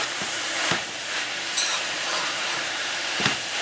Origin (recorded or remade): remade